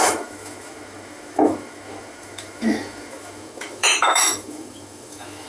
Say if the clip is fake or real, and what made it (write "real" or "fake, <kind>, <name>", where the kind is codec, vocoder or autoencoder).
fake, autoencoder, DAC-VAE